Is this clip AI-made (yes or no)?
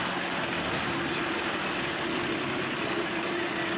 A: no